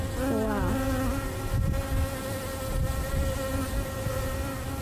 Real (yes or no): yes